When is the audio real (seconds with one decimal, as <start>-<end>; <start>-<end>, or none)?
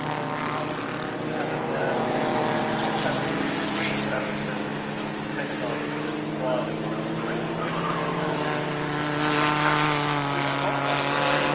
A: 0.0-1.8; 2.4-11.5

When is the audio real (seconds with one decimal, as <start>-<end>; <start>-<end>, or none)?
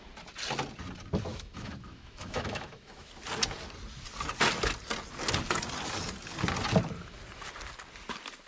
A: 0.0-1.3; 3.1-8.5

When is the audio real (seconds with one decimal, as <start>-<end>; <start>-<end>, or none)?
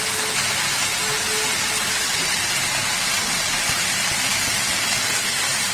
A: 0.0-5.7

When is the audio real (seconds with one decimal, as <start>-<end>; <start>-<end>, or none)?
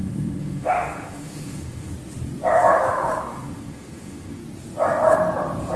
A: 1.9-2.9; 4.4-5.8